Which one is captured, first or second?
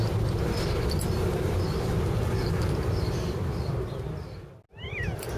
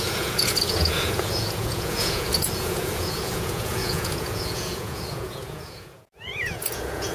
first